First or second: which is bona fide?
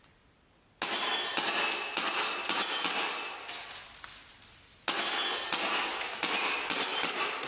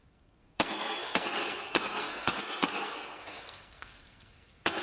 first